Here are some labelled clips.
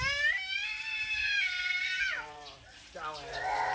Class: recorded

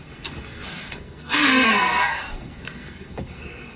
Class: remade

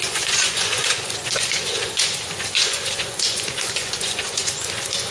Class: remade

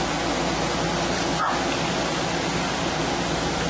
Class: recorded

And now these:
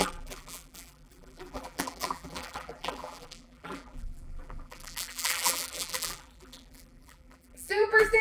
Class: remade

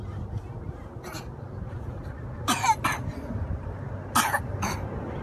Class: recorded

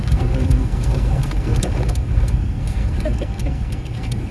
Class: remade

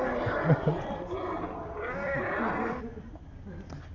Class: recorded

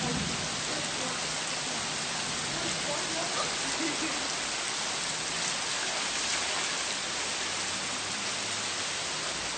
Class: recorded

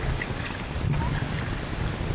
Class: recorded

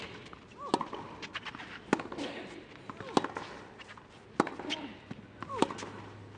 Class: recorded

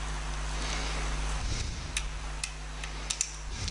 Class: recorded